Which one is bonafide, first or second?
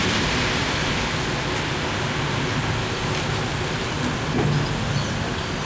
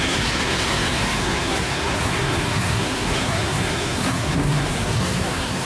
first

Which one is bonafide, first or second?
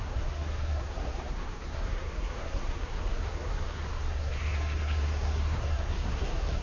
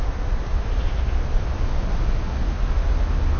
second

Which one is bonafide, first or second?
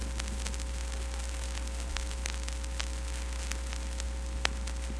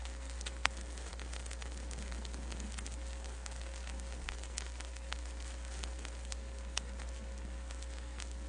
first